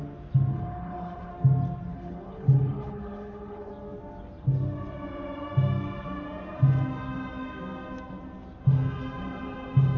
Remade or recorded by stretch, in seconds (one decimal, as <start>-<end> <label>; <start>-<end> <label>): 0.0-0.5 recorded; 0.5-1.3 remade; 1.3-1.9 recorded; 1.9-3.7 remade; 3.7-10.0 recorded